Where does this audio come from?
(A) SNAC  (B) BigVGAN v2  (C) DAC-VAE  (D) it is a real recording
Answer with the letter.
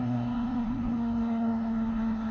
A